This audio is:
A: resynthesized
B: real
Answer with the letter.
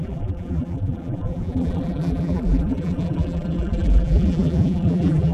A